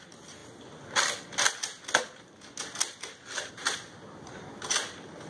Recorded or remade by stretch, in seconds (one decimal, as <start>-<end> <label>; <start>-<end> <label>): 0.0-5.3 recorded